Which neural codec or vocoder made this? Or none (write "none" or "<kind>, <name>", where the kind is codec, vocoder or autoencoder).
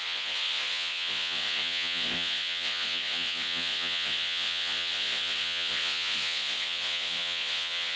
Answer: vocoder, Vocos